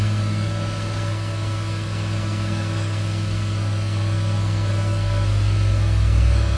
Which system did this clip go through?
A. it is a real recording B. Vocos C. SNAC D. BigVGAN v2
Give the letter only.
C